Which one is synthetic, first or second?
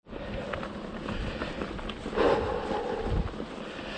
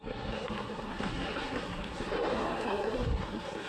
second